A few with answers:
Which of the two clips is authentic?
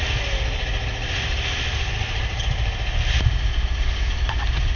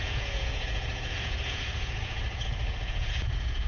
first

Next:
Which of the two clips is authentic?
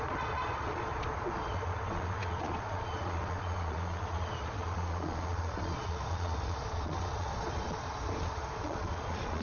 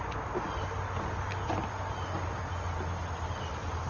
second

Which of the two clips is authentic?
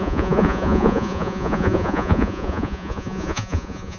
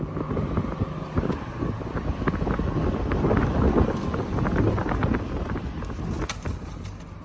second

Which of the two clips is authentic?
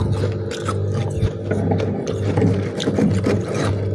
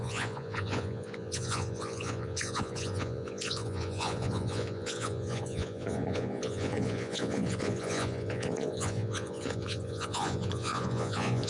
first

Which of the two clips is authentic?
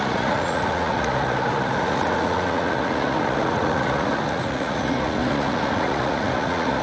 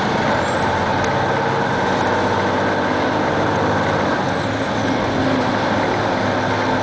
second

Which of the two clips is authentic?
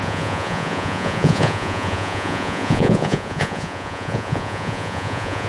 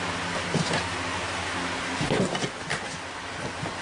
second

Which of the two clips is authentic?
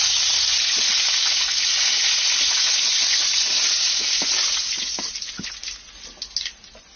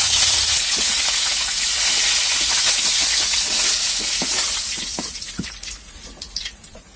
first